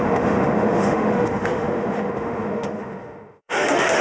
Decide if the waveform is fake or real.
fake